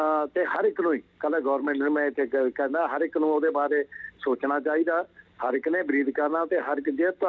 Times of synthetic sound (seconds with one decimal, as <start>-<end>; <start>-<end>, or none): none